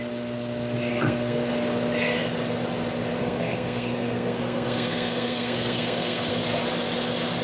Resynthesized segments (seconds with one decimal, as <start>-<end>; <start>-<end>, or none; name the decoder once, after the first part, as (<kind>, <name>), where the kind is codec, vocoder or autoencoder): 0.9-1.5 (codec, SNAC); 3.2-6.3